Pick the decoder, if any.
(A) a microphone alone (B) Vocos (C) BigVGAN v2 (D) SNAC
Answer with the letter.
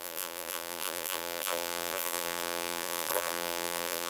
C